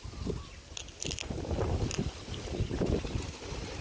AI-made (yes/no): no